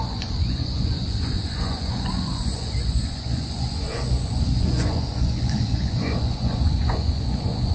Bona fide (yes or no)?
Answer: no